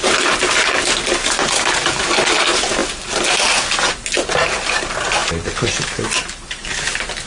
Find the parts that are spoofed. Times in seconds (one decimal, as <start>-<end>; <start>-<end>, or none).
none